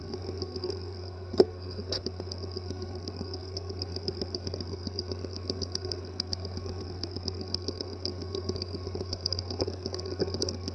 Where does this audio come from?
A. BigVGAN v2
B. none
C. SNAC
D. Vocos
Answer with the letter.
C